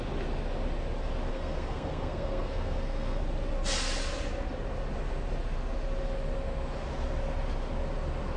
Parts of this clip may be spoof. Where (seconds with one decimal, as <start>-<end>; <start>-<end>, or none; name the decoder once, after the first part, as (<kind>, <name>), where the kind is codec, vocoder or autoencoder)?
1.3-3.2 (codec, SNAC)